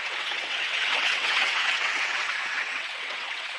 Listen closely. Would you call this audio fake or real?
fake